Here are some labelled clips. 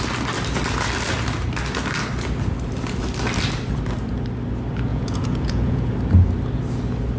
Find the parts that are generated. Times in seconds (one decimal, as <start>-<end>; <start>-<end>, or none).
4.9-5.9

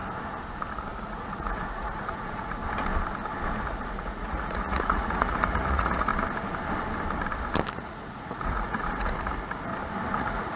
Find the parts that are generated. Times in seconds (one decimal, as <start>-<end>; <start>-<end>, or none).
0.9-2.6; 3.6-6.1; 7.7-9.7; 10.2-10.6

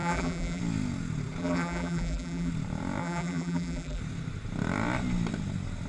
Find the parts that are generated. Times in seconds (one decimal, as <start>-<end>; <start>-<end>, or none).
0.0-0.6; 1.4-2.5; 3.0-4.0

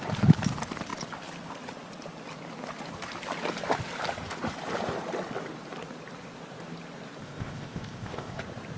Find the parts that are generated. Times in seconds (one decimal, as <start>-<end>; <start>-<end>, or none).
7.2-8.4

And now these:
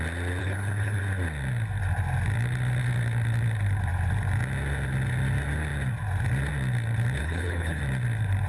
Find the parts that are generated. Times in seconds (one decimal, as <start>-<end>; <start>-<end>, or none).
0.4-1.0; 7.2-7.8

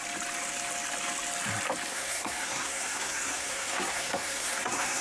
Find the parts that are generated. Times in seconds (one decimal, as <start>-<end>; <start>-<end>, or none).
1.9-5.0